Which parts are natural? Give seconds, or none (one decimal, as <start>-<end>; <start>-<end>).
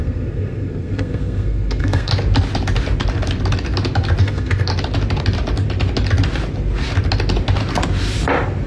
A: 2.1-4.2; 4.7-8.7